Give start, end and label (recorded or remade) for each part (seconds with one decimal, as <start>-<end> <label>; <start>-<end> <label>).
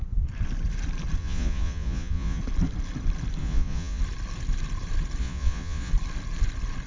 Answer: 0.0-1.2 recorded; 1.2-2.4 remade; 2.4-3.4 recorded; 3.4-4.0 remade; 4.0-5.2 recorded; 5.2-5.9 remade; 5.9-6.9 recorded